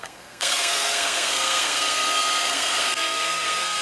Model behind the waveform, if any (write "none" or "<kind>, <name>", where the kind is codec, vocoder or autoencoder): codec, SNAC